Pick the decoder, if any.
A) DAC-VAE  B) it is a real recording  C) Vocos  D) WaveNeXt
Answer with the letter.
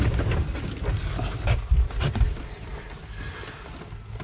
B